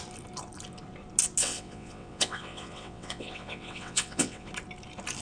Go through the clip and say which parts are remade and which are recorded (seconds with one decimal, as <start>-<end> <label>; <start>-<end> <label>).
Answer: 0.0-1.4 recorded; 1.4-4.5 remade; 4.5-5.2 recorded

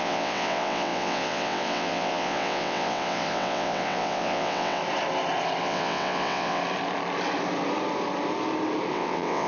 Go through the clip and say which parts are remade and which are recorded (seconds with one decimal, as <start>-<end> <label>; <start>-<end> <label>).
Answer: 0.0-4.8 remade; 4.8-5.6 recorded; 5.6-6.6 remade; 6.6-8.9 recorded; 8.9-9.5 remade

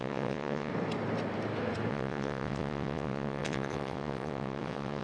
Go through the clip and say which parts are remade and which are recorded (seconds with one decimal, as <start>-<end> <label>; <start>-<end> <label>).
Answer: 0.0-0.7 remade; 0.7-1.9 recorded; 1.9-5.0 remade

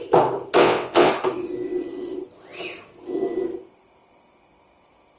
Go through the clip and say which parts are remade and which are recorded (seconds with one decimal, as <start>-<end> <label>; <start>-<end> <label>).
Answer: 0.0-0.6 recorded; 0.6-1.1 remade; 1.1-5.2 recorded

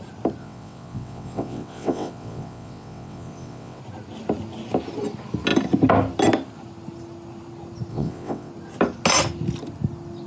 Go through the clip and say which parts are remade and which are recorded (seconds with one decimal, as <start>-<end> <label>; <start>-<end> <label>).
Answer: 0.0-0.4 recorded; 0.4-3.8 remade; 3.8-7.9 recorded; 7.9-8.5 remade; 8.5-10.3 recorded